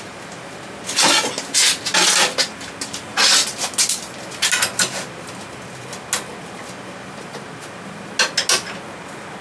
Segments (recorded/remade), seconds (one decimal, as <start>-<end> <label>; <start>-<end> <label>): 0.0-9.4 recorded